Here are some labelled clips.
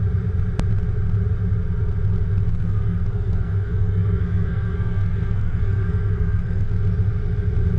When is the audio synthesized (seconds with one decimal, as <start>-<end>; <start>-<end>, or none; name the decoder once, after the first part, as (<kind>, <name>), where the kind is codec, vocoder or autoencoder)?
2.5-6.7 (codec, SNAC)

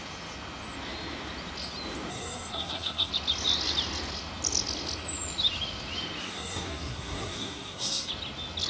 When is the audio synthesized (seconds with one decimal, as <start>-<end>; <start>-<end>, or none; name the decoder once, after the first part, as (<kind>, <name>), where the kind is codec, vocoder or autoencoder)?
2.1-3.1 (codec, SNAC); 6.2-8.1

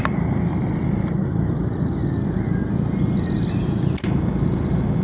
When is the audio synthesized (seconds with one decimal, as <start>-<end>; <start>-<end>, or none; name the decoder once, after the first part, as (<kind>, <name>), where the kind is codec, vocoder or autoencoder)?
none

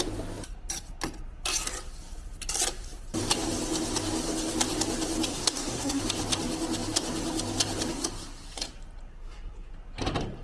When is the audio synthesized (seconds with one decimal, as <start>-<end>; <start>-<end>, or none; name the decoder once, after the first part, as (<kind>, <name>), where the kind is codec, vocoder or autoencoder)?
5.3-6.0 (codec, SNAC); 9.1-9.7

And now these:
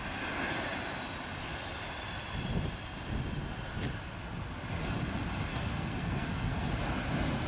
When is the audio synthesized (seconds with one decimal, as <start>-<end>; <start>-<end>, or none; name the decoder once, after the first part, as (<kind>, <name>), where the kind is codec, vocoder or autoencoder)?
5.5-6.7 (codec, SNAC)